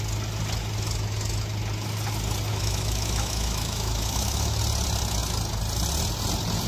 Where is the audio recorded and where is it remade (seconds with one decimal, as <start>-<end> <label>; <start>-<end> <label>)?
0.0-2.5 recorded; 2.5-4.6 remade; 4.6-6.7 recorded